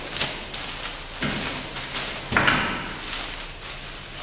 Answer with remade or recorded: recorded